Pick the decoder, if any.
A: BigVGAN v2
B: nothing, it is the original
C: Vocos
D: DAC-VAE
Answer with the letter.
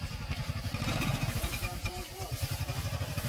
A